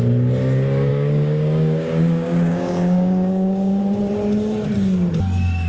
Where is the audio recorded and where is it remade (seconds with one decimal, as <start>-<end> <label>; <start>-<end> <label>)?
0.0-0.9 recorded; 0.9-3.8 remade; 3.8-5.7 recorded